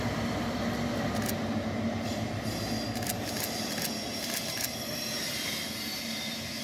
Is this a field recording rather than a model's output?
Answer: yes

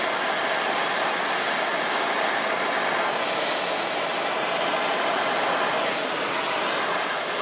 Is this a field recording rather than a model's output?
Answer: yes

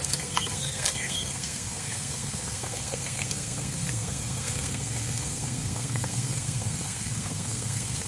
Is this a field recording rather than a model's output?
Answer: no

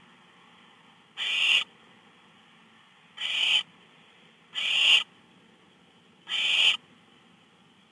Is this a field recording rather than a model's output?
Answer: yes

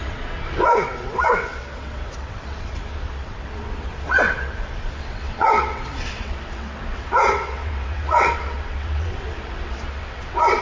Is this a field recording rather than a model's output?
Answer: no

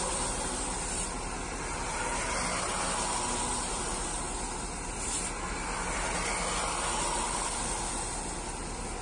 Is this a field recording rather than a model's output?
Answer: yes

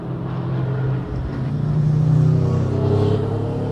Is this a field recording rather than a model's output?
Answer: yes